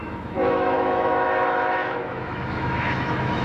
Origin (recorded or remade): remade